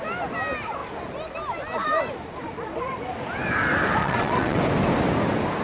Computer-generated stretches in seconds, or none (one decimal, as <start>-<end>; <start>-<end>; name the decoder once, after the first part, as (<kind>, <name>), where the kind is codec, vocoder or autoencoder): 4.0-4.6 (vocoder, WaveNeXt)